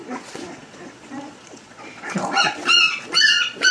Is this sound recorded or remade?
remade